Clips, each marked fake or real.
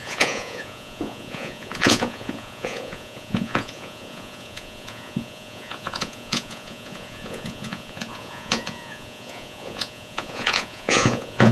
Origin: fake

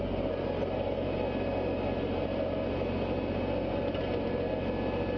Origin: real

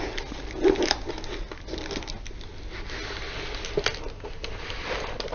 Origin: real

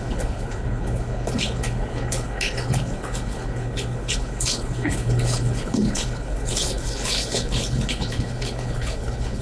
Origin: fake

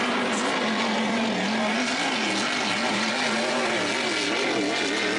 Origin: real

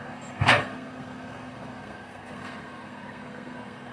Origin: fake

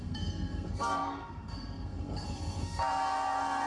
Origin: fake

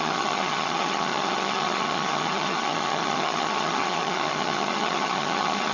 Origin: fake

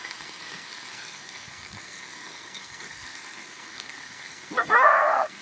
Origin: fake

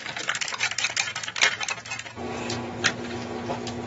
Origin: real